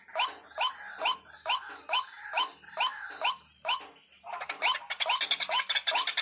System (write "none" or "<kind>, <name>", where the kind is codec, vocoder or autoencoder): none